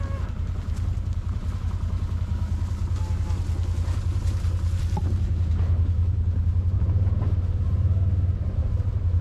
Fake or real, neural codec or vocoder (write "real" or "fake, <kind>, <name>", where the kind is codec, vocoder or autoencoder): real